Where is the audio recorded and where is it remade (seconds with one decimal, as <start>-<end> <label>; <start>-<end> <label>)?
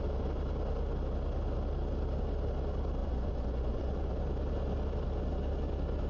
0.0-3.0 recorded; 3.0-4.1 remade; 4.1-6.1 recorded